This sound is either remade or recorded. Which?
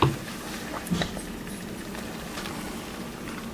recorded